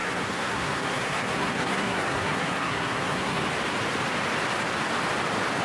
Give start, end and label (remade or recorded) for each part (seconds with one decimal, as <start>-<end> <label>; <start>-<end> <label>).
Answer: 0.0-3.4 remade; 3.4-5.6 recorded